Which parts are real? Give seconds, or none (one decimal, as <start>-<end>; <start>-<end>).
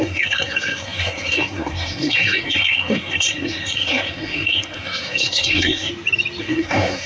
5.9-6.4